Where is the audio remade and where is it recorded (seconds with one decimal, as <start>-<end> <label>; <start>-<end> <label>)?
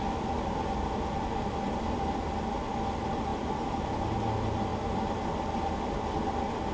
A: 0.0-3.3 recorded; 3.3-3.8 remade; 3.8-4.7 recorded; 4.7-5.3 remade; 5.3-6.7 recorded